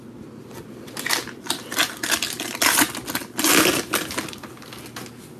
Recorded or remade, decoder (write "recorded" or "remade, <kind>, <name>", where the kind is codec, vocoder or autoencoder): recorded